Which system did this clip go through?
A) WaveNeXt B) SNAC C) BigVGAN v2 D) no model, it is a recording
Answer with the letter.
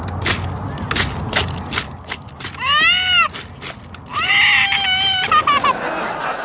D